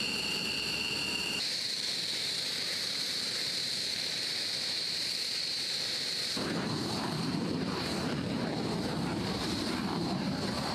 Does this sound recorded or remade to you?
remade